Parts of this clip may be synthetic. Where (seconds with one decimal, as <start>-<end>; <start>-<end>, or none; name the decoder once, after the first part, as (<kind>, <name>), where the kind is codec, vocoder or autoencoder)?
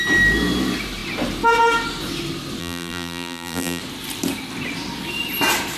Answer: 2.6-3.8 (vocoder, BigVGAN v2)